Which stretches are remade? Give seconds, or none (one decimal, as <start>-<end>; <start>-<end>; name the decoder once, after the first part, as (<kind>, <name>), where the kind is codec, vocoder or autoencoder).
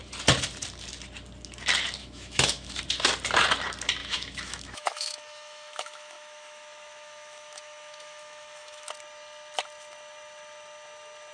2.0-2.8 (autoencoder, DAC-VAE); 4.0-8.9